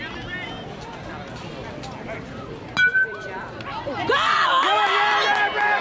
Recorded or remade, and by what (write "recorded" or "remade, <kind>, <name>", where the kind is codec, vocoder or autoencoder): recorded